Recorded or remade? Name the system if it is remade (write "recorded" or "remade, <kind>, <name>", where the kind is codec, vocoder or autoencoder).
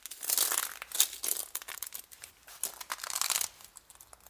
recorded